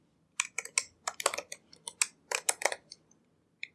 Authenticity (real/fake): real